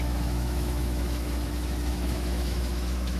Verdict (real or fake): fake